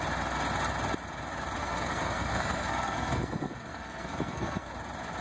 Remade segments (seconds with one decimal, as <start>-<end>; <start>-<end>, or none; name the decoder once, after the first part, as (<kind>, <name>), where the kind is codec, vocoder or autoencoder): 1.6-4.7 (codec, SNAC)